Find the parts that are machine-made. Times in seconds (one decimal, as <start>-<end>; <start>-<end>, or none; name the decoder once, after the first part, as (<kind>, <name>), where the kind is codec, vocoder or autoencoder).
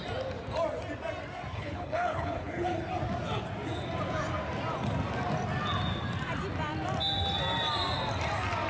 1.5-2.9 (codec, HILCodec)